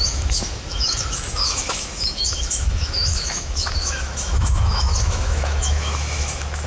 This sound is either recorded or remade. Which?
remade